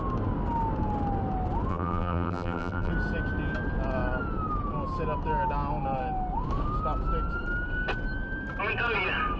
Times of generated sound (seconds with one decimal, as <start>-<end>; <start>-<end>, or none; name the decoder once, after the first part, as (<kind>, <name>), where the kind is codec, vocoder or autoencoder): 1.7-2.9 (vocoder, BigVGAN v2)